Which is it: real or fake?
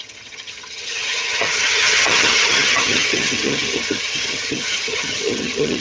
fake